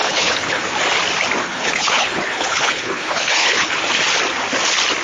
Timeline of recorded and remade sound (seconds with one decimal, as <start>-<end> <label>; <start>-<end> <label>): 0.0-0.6 remade; 0.6-1.4 recorded; 1.4-3.7 remade; 3.7-5.0 recorded